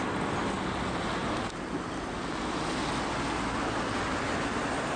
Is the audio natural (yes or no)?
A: yes